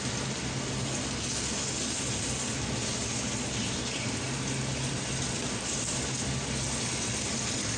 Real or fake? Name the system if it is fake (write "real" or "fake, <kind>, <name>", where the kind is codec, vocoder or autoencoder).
real